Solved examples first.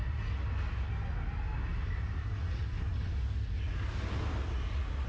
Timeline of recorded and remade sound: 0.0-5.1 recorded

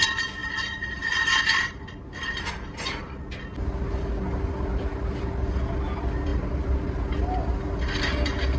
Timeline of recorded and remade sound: 0.0-8.6 recorded